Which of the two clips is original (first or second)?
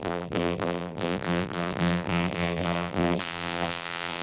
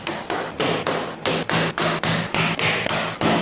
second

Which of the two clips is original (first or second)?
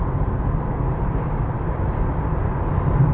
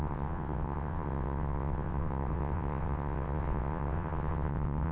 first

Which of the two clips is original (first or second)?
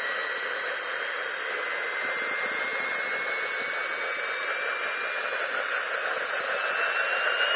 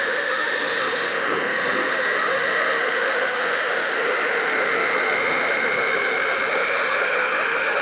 first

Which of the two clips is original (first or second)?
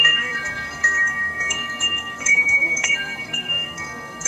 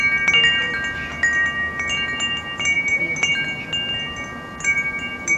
second